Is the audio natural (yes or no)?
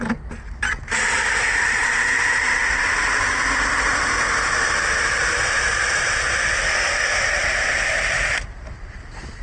yes